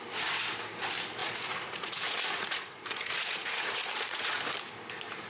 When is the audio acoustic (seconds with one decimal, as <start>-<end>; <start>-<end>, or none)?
0.0-1.2; 4.4-5.3